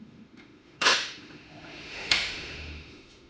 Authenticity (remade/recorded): remade